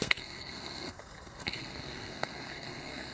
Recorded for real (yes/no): no